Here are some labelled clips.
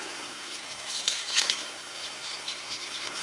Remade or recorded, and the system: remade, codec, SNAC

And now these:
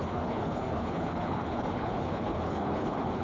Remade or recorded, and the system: remade, codec, HILCodec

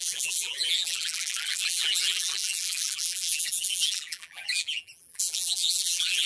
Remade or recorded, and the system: remade, vocoder, BigVGAN v2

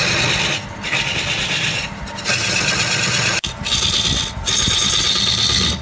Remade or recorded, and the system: recorded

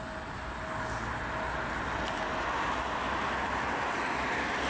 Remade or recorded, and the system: recorded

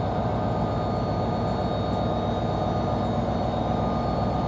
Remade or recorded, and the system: recorded